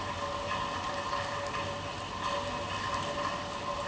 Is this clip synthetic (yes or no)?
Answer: no